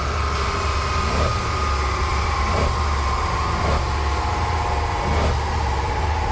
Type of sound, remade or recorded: recorded